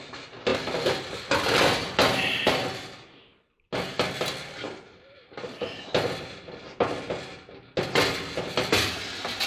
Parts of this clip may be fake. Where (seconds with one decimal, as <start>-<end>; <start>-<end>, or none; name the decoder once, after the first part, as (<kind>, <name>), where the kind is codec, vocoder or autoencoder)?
none